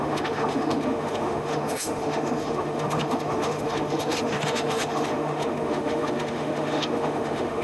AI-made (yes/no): yes